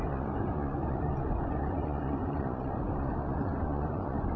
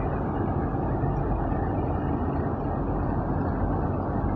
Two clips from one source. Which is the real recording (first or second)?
second